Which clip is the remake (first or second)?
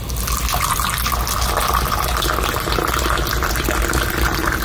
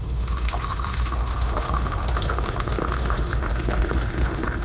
second